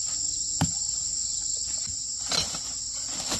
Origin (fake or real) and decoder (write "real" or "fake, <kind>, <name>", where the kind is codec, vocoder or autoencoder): real